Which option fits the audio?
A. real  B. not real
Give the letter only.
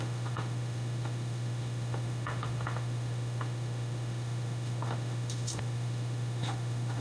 B